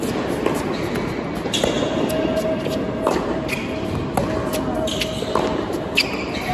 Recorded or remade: recorded